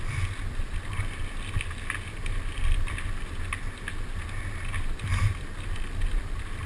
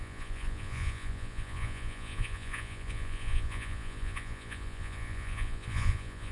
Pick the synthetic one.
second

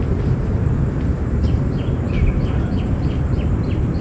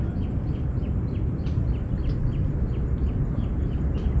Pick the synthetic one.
first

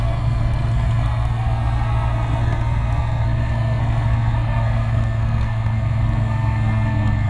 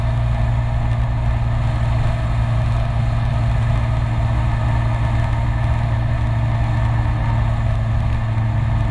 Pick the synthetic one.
first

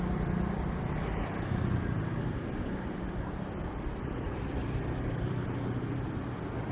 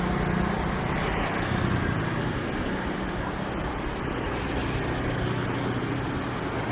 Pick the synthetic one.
first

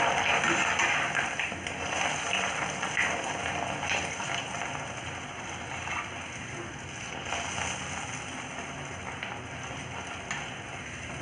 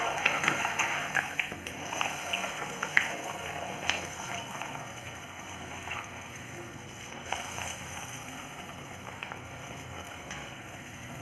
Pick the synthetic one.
second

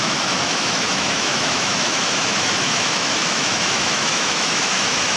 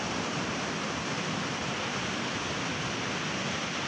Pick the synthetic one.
first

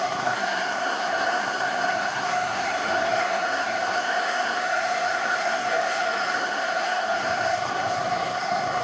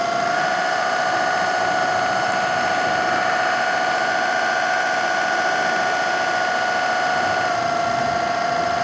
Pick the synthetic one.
first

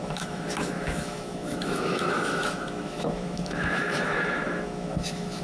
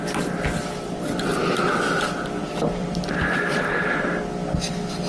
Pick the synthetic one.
first